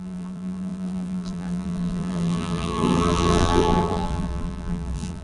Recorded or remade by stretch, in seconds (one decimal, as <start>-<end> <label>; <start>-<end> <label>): 0.0-5.2 remade